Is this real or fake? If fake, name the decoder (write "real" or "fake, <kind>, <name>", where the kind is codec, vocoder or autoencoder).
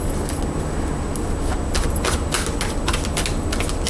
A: real